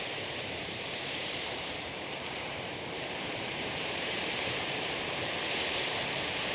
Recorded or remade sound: remade